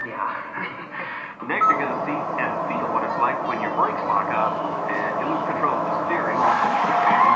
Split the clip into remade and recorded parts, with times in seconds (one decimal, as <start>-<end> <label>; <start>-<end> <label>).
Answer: 0.0-4.4 recorded; 4.4-6.9 remade; 6.9-7.4 recorded